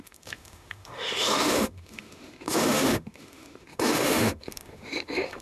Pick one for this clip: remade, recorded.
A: remade